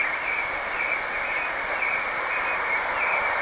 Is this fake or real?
real